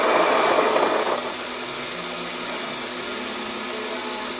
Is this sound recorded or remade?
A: recorded